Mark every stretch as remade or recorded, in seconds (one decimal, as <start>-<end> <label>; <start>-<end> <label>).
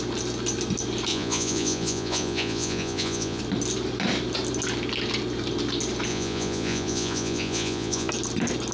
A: 0.0-1.1 recorded; 1.1-3.4 remade; 3.4-6.1 recorded; 6.1-8.1 remade; 8.1-8.7 recorded